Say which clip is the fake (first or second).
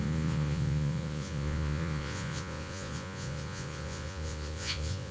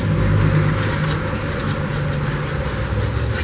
first